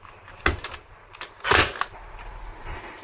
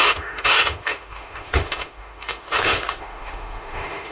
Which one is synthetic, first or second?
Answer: second